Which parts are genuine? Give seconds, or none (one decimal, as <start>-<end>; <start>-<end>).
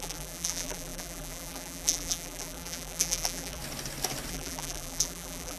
3.6-4.3